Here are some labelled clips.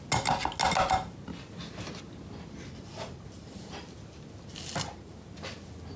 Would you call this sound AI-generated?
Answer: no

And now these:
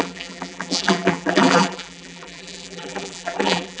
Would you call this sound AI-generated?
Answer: yes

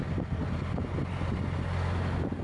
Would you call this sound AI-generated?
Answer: no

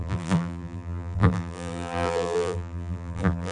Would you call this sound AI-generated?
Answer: yes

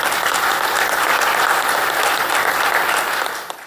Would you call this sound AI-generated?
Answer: no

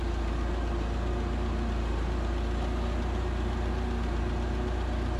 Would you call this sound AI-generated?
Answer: no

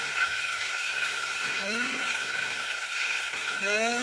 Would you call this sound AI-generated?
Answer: yes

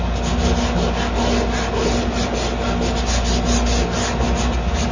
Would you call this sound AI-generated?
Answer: no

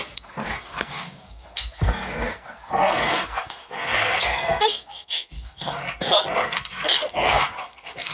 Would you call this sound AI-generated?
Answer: yes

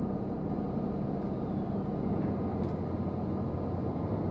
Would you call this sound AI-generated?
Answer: no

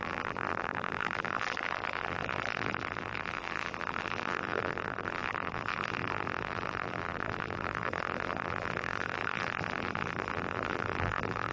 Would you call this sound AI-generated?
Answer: yes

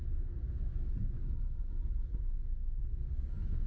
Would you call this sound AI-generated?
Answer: no